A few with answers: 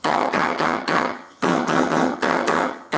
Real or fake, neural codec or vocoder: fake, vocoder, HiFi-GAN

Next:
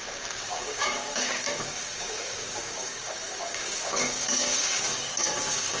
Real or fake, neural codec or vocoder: fake, codec, DAC